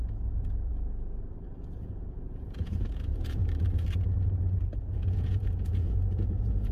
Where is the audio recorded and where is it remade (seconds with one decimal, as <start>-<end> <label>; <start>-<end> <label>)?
0.0-0.7 remade; 0.7-1.4 recorded; 1.4-3.4 remade; 3.4-4.8 recorded; 4.8-6.7 remade